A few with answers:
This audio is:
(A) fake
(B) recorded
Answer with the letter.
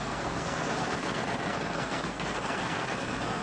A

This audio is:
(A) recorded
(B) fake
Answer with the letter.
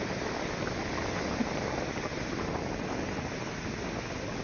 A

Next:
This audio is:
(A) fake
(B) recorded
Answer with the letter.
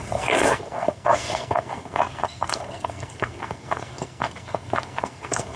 A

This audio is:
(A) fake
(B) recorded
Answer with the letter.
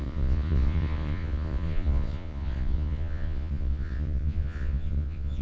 A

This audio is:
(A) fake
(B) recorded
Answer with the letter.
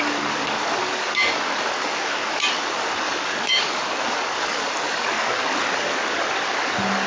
A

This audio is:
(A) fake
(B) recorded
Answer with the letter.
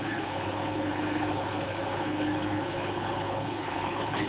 A